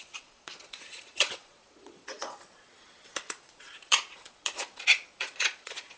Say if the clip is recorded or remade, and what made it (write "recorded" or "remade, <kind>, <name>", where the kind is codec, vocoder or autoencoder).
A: remade, vocoder, Vocos